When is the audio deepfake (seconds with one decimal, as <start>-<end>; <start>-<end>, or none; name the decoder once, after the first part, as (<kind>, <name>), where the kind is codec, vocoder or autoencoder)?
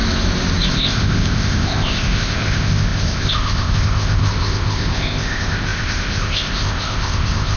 0.7-7.6 (codec, ZipCodec)